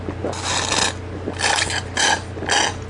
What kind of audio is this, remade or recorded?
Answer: recorded